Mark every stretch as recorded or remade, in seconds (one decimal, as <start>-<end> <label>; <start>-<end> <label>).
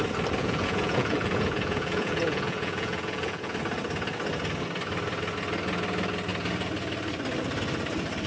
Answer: 0.0-0.4 recorded; 0.4-3.6 remade; 3.6-8.3 recorded